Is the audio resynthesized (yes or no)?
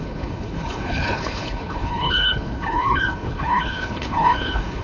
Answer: yes